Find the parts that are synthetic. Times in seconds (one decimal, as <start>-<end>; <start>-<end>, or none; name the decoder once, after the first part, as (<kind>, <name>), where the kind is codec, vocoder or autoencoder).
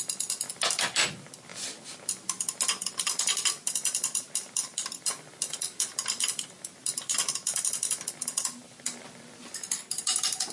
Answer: 4.7-6.8 (vocoder, BigVGAN v2); 8.6-9.2